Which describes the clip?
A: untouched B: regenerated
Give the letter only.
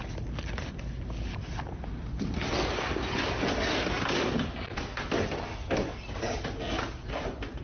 A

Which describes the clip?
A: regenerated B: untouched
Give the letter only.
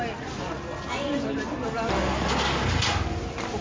B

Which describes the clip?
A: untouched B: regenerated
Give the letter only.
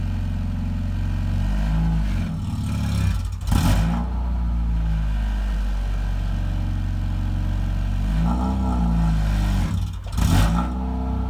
A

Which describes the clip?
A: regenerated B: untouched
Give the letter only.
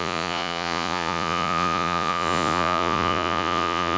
A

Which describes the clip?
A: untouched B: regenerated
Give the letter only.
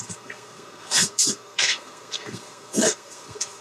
B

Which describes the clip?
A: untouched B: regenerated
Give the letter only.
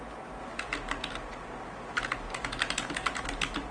A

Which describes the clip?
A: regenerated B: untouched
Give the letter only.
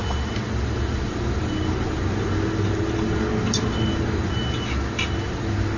B